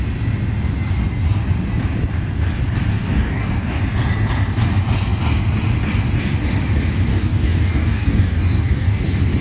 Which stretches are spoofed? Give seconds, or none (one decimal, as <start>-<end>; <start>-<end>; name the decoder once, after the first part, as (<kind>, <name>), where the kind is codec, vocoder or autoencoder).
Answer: 2.9-3.8 (codec, DAC); 7.1-9.0